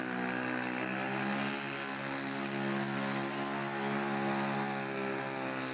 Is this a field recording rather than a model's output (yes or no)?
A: yes